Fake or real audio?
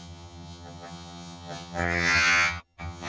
fake